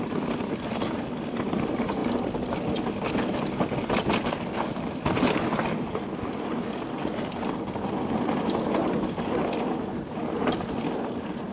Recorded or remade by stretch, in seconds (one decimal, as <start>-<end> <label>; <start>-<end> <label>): 0.0-11.5 recorded